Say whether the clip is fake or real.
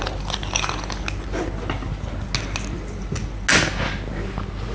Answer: real